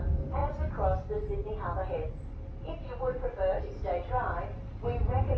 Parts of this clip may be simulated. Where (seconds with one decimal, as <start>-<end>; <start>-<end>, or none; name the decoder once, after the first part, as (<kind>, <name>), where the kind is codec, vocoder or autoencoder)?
none